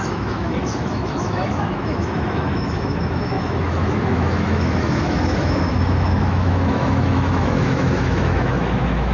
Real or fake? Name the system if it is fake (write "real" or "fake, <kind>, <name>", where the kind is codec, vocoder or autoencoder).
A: fake, autoencoder, DAC-VAE